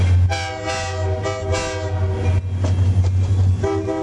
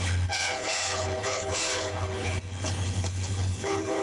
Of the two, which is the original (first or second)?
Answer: first